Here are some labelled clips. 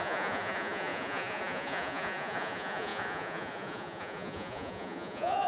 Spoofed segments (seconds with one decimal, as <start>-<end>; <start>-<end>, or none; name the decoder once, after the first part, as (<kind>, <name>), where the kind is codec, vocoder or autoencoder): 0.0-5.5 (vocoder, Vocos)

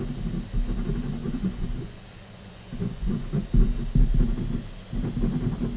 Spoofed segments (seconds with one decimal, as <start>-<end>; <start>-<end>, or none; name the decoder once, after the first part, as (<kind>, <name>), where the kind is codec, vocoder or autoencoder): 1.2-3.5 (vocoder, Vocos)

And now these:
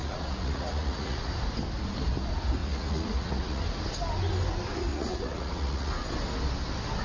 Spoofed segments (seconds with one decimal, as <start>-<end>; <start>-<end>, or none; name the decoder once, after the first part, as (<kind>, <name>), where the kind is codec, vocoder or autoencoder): 0.0-1.3 (vocoder, Vocos); 2.6-3.6; 4.9-5.9

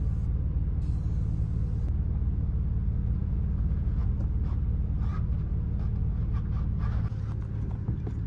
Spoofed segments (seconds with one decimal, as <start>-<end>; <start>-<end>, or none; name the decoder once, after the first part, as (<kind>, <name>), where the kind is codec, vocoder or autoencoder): 3.2-4.1 (vocoder, Vocos)

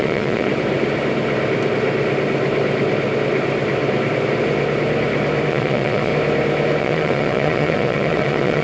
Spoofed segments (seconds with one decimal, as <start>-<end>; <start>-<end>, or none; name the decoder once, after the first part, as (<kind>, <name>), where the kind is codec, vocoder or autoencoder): 0.0-0.5 (vocoder, Vocos); 5.5-6.1; 6.8-8.6

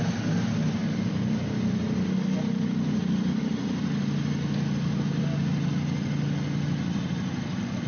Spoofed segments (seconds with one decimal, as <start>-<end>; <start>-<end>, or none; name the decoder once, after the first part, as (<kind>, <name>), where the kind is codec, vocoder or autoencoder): none